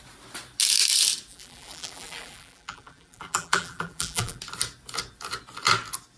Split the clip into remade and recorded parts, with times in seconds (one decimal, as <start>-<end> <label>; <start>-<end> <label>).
0.0-1.3 recorded; 1.3-4.4 remade; 4.4-6.2 recorded